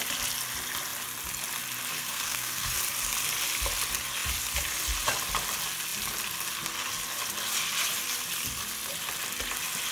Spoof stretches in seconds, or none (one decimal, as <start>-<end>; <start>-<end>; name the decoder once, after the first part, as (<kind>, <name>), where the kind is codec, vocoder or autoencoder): 2.0-2.7 (codec, SNAC)